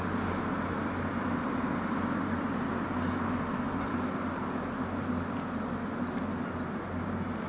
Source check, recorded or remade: recorded